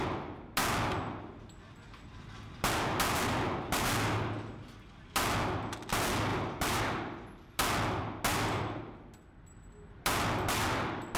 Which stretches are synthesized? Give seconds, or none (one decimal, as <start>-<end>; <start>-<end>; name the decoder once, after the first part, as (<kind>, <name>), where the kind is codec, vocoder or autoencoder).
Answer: 6.3-6.8 (vocoder, BigVGAN v2); 8.3-8.8

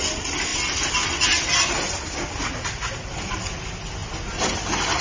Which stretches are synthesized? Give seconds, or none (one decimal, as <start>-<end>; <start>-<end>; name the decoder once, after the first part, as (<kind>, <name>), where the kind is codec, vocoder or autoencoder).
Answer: none

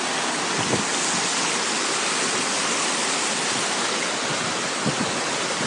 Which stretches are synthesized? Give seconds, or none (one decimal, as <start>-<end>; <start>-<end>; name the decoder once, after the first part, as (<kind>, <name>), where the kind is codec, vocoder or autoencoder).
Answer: none

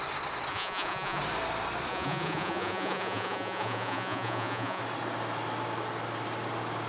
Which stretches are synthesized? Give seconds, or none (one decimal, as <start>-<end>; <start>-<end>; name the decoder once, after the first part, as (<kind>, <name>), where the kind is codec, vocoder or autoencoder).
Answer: 0.5-1.2 (vocoder, Vocos); 1.9-4.8

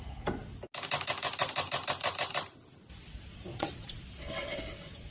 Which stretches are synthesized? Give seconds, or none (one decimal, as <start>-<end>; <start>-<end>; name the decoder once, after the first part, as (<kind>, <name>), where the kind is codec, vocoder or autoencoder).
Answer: 3.3-5.1 (vocoder, WaveNeXt)

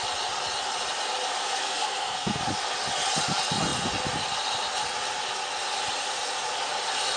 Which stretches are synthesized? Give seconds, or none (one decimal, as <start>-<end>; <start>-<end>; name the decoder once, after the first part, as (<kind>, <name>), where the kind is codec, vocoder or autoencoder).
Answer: 1.6-2.4 (codec, SNAC)

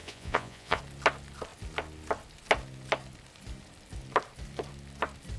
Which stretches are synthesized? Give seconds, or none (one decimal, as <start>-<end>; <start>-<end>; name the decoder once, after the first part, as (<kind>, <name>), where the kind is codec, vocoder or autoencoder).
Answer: 0.0-0.8 (vocoder, Vocos)

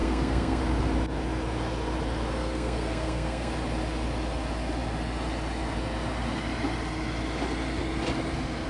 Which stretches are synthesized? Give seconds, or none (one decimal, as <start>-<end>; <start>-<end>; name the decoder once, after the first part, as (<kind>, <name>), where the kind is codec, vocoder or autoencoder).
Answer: 0.0-0.6 (codec, SNAC); 2.4-3.5